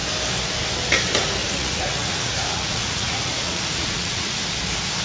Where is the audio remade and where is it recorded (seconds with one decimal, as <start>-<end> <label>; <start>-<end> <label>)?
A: 0.0-1.4 recorded; 1.4-4.4 remade; 4.4-5.0 recorded